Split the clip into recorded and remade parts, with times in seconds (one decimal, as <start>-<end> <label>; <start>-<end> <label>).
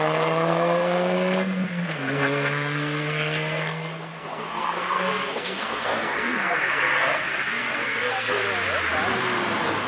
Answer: 0.0-8.4 remade; 8.4-9.9 recorded